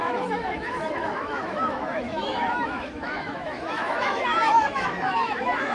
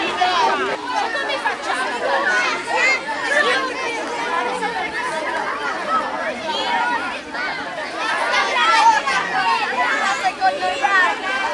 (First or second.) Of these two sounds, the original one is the second